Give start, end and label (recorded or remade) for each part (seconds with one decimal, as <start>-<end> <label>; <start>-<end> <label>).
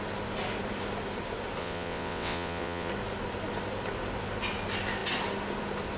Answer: 0.0-1.6 recorded; 1.6-2.9 remade; 2.9-6.0 recorded